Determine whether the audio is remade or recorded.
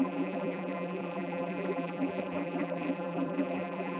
remade